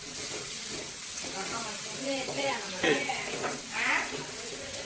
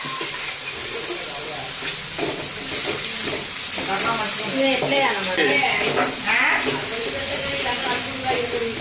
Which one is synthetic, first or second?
first